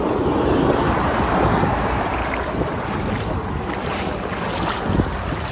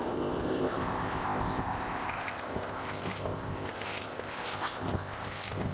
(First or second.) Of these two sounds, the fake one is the second